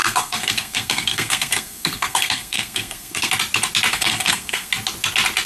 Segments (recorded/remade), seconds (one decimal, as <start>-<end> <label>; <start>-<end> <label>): 0.0-3.3 remade; 3.3-3.9 recorded; 3.9-4.7 remade; 4.7-5.5 recorded